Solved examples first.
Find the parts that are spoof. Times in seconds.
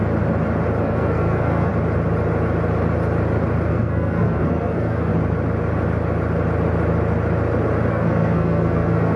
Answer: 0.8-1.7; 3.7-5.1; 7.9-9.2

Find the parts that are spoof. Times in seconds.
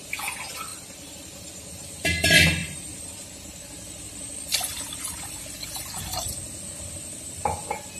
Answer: 0.7-1.5; 2.6-5.4